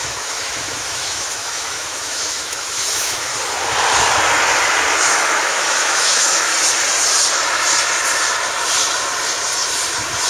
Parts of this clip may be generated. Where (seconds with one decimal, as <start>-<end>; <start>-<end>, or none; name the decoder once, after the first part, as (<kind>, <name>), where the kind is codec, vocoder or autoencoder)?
0.0-3.3 (autoencoder, DAC-VAE); 5.1-6.5